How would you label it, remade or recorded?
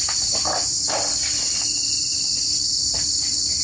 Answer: recorded